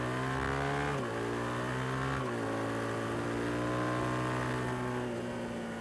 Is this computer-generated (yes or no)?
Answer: no